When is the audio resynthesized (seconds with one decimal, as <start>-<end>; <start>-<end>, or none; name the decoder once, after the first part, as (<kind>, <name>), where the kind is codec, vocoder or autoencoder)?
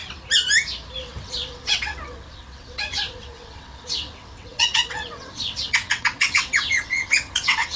1.0-7.8 (vocoder, WaveNeXt)